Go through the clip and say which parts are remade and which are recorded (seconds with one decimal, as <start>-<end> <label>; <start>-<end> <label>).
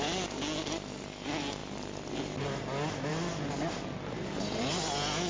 0.0-5.3 recorded